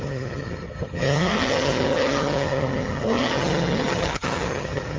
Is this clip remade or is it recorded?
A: remade